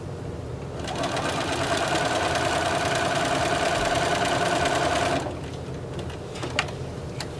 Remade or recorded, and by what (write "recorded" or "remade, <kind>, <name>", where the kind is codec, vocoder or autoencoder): recorded